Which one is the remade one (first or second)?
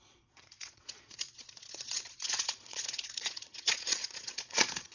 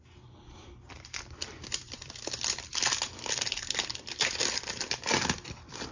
first